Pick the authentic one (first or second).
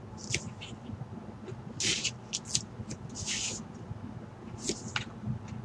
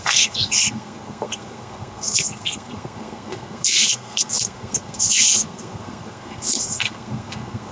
first